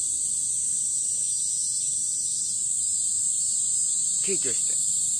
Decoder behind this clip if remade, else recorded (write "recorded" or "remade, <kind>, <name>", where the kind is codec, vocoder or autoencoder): recorded